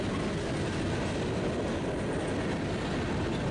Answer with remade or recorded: recorded